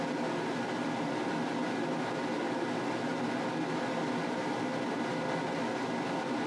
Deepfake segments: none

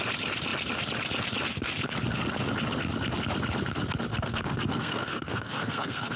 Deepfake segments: 4.1-6.2 (codec, SNAC)

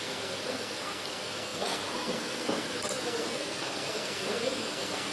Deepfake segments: 0.0-5.1 (codec, SNAC)

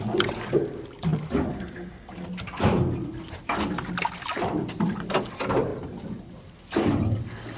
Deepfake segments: none

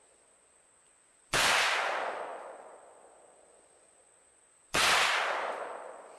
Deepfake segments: 0.0-4.8 (vocoder, Vocos); 5.5-6.2

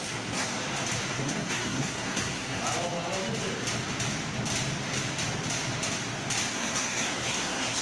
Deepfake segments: 0.0-0.6 (codec, SNAC); 1.1-2.6; 6.5-7.8